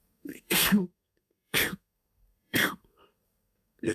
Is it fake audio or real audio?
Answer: fake